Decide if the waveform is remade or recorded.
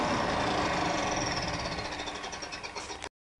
recorded